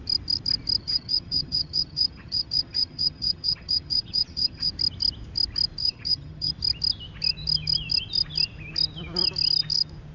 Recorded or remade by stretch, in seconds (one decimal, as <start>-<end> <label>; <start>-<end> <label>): 0.0-0.8 recorded; 0.8-4.7 remade; 4.7-5.8 recorded; 5.8-6.5 remade; 6.5-10.1 recorded